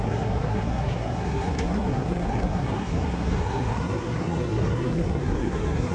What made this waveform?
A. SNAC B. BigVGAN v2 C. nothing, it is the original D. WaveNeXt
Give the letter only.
A